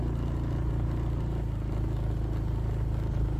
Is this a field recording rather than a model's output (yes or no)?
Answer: yes